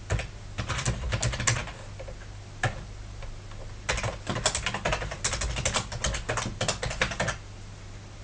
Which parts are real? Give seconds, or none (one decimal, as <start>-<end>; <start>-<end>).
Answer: 0.0-8.2